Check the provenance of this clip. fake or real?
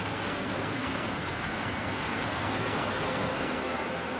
fake